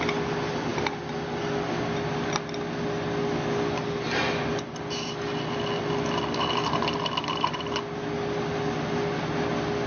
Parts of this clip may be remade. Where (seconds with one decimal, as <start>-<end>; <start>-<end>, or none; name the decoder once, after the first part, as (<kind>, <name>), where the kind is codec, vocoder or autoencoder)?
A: none